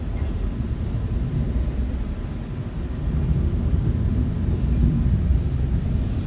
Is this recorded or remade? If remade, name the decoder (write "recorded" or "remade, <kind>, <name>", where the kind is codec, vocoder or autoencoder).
recorded